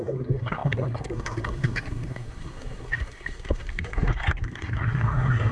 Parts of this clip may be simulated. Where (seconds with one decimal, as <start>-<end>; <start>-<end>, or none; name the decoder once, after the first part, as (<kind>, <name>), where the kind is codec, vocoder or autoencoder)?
0.0-5.5 (codec, SNAC)